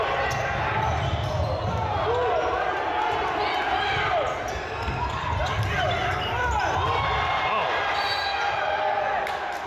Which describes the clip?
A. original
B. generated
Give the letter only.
A